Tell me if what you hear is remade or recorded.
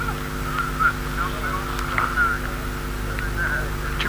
recorded